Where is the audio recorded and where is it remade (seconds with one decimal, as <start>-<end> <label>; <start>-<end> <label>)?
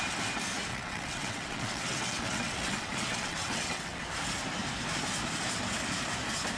0.0-0.7 recorded; 0.7-4.0 remade; 4.0-6.6 recorded